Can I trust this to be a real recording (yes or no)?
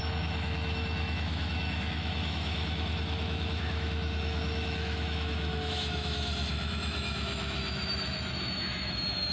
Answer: no